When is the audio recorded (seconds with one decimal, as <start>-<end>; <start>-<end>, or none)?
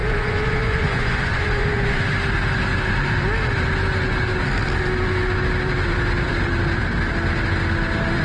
2.0-8.2